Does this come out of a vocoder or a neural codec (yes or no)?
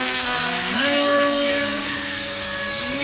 yes